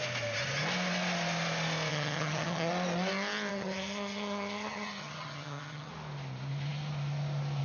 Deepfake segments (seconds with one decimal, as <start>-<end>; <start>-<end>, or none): 1.9-2.7; 3.5-5.9